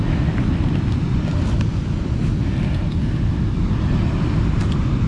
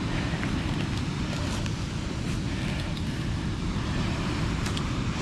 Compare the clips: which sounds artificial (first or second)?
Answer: second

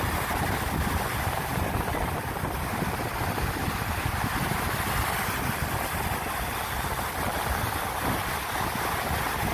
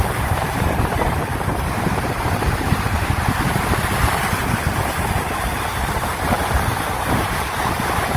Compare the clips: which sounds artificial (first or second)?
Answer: second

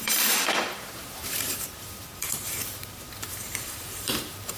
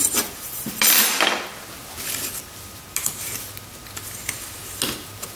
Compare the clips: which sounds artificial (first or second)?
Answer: first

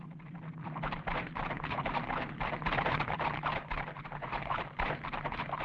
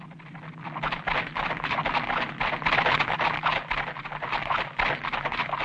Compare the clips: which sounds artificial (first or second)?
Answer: first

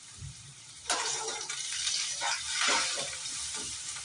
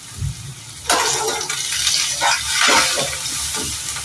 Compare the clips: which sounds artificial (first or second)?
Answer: first